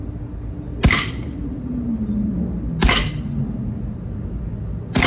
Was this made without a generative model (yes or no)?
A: yes